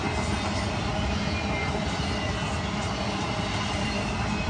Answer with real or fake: real